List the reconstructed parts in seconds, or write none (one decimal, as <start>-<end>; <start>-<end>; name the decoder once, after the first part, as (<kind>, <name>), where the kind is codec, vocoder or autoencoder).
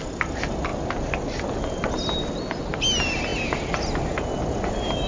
none